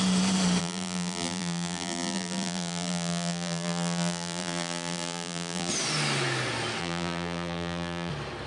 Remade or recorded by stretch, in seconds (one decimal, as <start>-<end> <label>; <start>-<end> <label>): 0.0-0.6 recorded; 0.6-5.7 remade; 5.7-6.8 recorded; 6.8-8.1 remade; 8.1-8.5 recorded